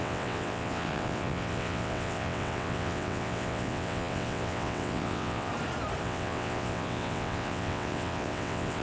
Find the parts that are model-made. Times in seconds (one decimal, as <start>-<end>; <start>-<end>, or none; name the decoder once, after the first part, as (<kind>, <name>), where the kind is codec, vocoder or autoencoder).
0.0-5.5 (vocoder, WaveNeXt); 6.0-8.8